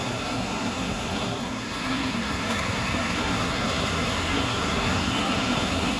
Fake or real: fake